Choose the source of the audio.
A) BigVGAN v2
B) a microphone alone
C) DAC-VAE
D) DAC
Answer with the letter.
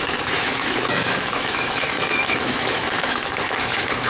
C